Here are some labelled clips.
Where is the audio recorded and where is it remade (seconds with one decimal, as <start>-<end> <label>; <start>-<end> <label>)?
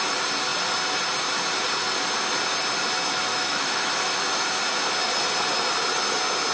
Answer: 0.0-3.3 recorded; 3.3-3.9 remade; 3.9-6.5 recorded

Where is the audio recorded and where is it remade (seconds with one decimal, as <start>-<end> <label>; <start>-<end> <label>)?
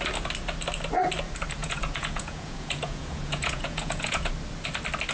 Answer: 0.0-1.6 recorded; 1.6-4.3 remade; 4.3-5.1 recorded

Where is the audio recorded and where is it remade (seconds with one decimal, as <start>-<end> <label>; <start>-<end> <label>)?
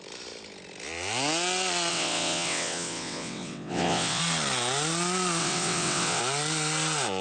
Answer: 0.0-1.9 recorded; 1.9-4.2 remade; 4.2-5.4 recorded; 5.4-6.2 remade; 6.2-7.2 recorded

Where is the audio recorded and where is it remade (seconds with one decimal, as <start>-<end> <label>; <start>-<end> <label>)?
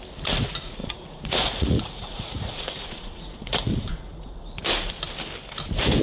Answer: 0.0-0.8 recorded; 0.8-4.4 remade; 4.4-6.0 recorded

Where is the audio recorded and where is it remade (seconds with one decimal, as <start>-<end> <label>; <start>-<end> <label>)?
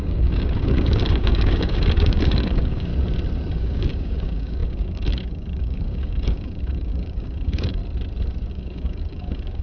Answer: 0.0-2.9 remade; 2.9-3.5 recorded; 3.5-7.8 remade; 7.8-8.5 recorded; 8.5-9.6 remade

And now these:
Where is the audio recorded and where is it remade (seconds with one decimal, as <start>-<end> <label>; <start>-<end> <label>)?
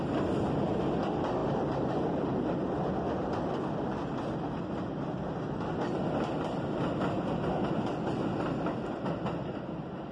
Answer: 0.0-10.1 recorded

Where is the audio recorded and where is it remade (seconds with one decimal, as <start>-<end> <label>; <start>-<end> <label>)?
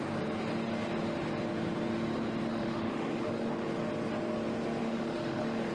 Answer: 0.0-2.5 recorded; 2.5-3.5 remade; 3.5-4.8 recorded; 4.8-5.7 remade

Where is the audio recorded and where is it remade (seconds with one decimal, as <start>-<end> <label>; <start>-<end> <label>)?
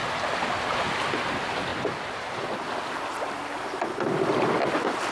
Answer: 0.0-5.1 recorded